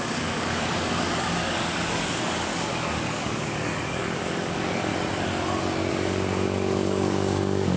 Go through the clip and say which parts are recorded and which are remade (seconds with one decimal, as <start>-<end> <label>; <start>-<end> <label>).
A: 0.0-4.9 remade; 4.9-5.9 recorded; 5.9-7.8 remade